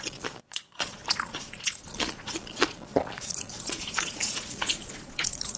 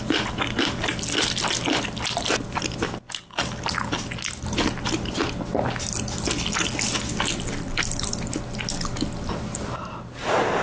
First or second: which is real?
second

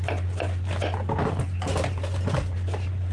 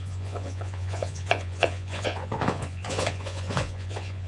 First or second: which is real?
first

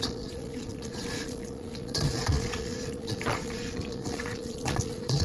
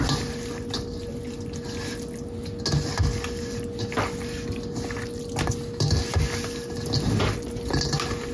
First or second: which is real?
second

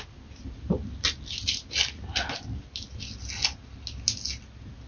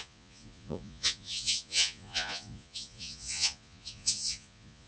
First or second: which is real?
first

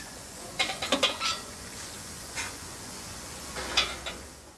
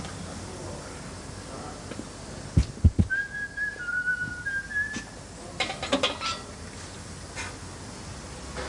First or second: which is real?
second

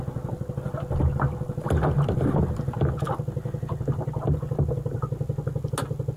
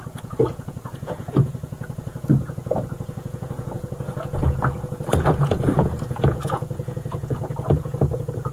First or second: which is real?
first